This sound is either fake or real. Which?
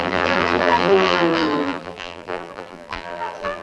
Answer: fake